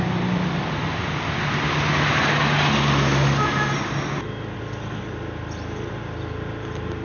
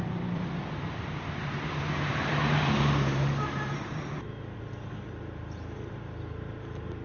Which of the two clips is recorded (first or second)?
first